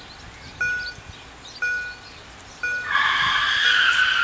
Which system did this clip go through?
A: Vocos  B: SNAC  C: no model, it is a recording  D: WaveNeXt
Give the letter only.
C